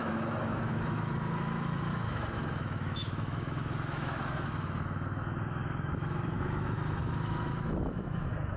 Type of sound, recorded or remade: remade